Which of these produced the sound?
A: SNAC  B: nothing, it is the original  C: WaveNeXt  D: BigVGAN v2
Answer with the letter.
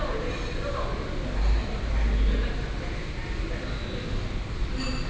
B